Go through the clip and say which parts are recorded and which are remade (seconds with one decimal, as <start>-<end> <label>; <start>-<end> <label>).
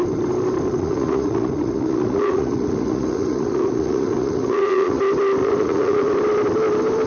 0.0-0.7 recorded; 0.7-5.0 remade; 5.0-5.4 recorded; 5.4-6.1 remade; 6.1-7.1 recorded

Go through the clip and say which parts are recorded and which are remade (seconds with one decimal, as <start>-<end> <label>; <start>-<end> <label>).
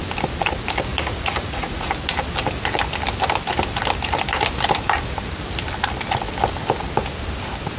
0.0-0.9 recorded; 0.9-1.9 remade; 1.9-7.8 recorded